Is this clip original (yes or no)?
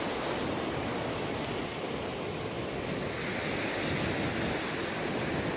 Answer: yes